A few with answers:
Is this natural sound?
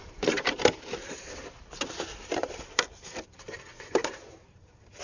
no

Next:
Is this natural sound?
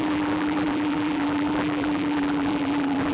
no